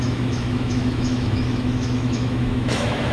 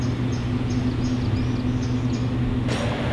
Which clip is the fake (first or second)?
first